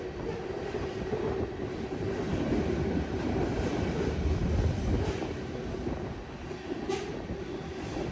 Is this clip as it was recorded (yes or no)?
yes